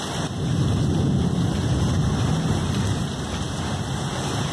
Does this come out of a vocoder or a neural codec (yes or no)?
no